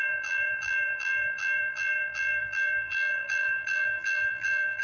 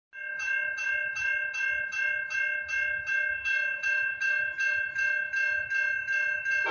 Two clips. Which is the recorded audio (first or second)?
second